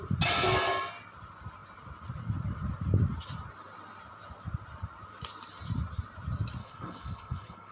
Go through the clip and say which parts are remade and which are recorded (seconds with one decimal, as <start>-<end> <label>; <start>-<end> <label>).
0.0-6.6 recorded; 6.6-7.7 remade